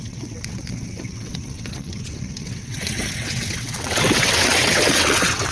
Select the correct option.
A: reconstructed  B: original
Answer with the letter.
A